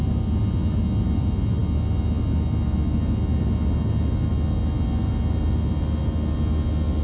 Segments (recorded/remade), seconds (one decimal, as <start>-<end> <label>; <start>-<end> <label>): 0.0-7.0 recorded